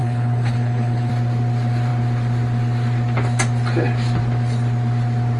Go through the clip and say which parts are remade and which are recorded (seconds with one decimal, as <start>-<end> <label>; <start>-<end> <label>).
0.0-1.1 remade; 1.1-5.4 recorded